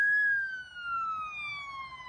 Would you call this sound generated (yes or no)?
no